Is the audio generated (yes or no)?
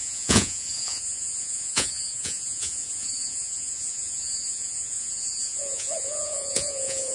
yes